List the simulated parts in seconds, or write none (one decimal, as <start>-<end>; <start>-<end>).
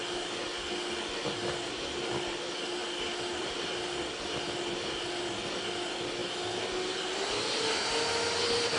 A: none